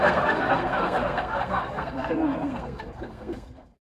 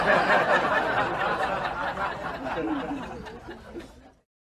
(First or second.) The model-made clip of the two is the first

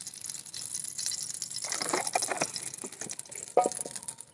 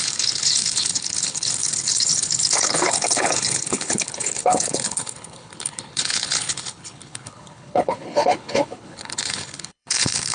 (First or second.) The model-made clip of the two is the second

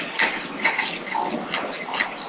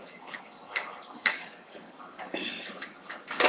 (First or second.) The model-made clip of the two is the second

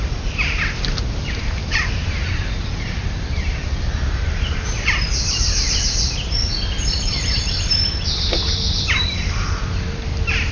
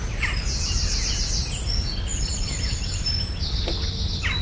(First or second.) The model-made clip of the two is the first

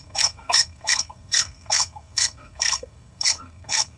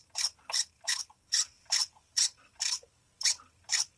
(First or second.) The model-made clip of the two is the first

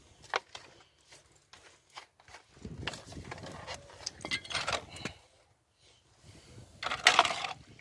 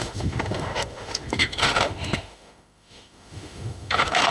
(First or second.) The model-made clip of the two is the second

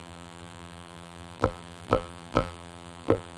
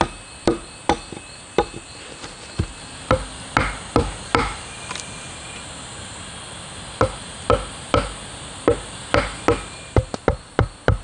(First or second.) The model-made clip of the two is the first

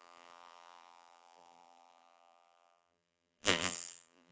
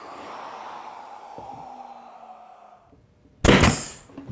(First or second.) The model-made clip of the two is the first